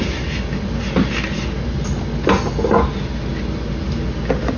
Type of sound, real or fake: real